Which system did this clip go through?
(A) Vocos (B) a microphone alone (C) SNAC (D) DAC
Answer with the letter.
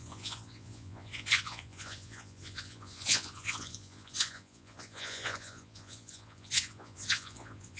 A